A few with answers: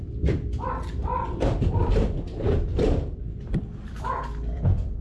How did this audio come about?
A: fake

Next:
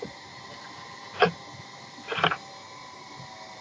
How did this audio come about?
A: real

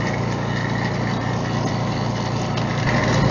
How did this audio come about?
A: real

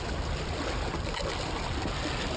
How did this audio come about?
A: real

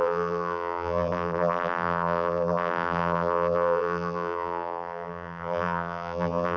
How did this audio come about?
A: fake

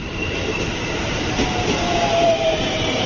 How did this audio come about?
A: fake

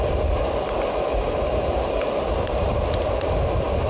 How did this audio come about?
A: real